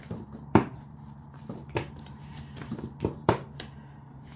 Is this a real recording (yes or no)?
no